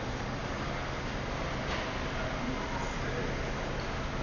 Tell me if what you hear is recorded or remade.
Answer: recorded